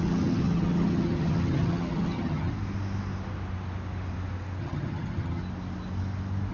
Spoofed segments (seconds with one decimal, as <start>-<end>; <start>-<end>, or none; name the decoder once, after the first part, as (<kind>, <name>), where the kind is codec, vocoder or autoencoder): 0.0-2.5 (vocoder, HiFi-GAN); 4.6-5.4